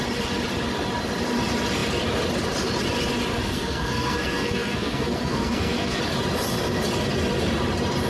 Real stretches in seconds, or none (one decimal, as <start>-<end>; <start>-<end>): 0.0-3.3; 6.0-8.1